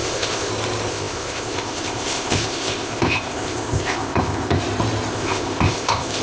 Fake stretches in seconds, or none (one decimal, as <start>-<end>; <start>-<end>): 0.0-0.5; 0.9-4.6; 5.1-6.2